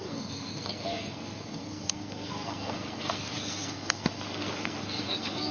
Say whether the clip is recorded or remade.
remade